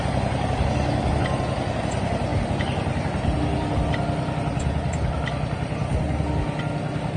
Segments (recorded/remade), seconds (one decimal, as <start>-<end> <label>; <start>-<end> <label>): 0.0-7.2 recorded